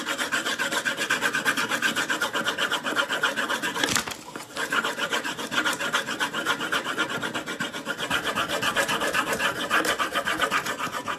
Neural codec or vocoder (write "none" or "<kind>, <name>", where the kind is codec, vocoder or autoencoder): vocoder, BigVGAN v2